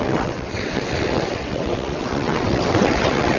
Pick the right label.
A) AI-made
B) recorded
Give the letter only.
A